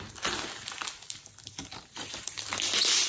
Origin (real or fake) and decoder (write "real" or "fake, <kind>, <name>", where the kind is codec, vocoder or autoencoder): real